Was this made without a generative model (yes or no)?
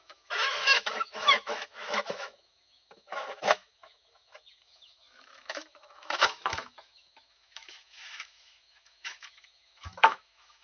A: no